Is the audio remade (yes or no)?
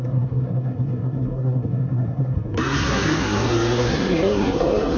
yes